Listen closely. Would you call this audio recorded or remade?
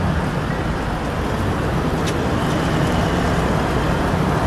recorded